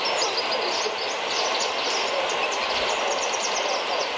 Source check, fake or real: real